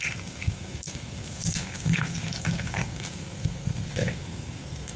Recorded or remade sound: remade